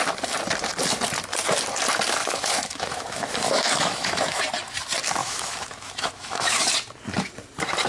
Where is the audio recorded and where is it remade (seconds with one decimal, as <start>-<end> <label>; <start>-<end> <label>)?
0.0-2.2 recorded; 2.2-4.4 remade; 4.4-5.2 recorded; 5.2-6.6 remade; 6.6-7.9 recorded